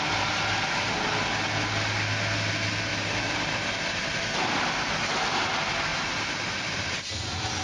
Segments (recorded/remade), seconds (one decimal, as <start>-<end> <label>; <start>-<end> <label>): 0.0-2.9 recorded; 2.9-4.2 remade; 4.2-5.9 recorded; 5.9-7.0 remade; 7.0-7.6 recorded